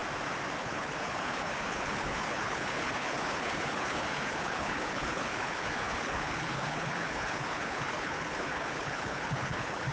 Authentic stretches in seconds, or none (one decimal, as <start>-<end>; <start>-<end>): 0.0-0.6